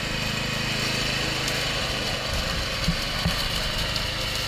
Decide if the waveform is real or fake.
real